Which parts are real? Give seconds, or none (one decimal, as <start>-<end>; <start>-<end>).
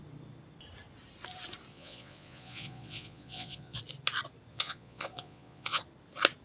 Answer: 0.0-1.7; 3.8-4.5; 5.8-6.4